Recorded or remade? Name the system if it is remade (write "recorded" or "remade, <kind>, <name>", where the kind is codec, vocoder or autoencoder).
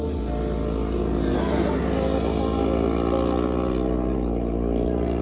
recorded